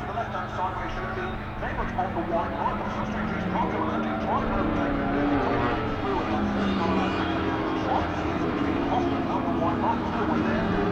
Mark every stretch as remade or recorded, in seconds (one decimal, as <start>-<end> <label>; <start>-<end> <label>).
0.0-3.0 remade; 3.0-6.1 recorded; 6.1-10.4 remade; 10.4-10.9 recorded

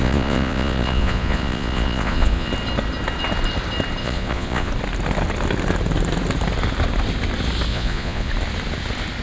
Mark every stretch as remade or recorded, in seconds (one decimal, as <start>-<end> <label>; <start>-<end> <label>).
0.0-2.5 remade; 2.5-4.0 recorded; 4.0-4.7 remade; 4.7-7.7 recorded; 7.7-8.3 remade; 8.3-9.2 recorded

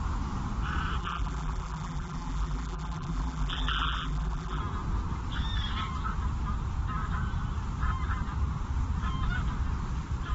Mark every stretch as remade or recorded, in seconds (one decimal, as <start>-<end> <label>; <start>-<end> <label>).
0.0-1.0 recorded; 1.0-4.6 remade; 4.6-10.3 recorded

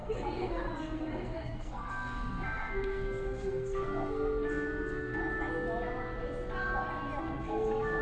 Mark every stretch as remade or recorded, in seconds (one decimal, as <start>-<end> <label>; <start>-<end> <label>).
0.0-5.2 remade; 5.2-7.2 recorded; 7.2-8.0 remade

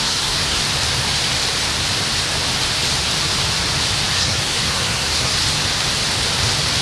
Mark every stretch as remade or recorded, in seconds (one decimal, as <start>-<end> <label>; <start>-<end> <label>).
0.0-0.6 remade; 0.6-4.1 recorded; 4.1-5.4 remade; 5.4-6.8 recorded

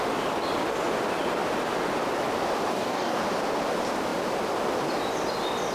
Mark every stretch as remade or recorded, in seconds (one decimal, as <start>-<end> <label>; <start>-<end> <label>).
0.0-2.7 recorded; 2.7-3.2 remade; 3.2-5.7 recorded

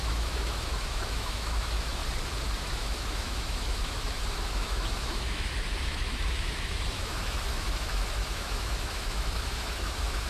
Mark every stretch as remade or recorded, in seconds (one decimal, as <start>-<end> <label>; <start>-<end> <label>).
0.0-2.0 remade; 2.0-2.6 recorded; 2.6-10.3 remade